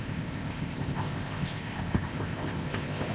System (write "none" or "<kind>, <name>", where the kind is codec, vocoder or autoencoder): codec, ZipCodec